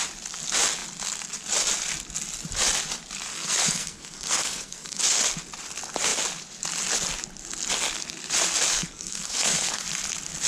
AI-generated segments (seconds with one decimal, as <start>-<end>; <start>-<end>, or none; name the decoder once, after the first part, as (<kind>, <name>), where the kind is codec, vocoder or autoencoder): 3.3-5.0 (codec, SNAC); 8.7-9.8